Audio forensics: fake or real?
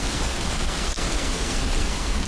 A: fake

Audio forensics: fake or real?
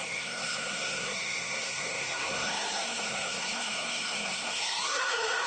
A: fake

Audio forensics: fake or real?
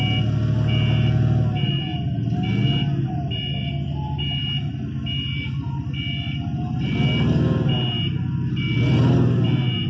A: real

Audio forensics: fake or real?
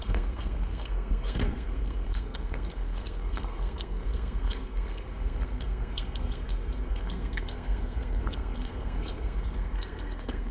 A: fake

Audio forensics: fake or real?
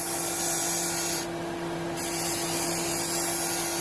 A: real